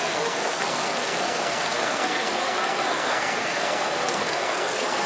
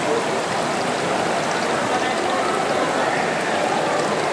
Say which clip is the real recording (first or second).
second